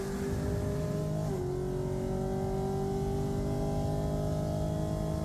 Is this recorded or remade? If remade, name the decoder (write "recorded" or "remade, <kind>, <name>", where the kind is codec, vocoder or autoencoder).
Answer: recorded